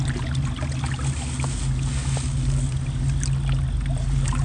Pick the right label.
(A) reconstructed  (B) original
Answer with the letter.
B